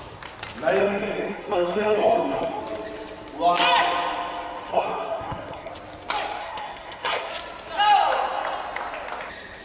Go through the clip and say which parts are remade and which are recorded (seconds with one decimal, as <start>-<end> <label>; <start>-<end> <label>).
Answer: 0.0-0.8 recorded; 0.8-2.6 remade; 2.6-4.7 recorded; 4.7-5.7 remade; 5.7-6.4 recorded; 6.4-7.3 remade; 7.3-9.6 recorded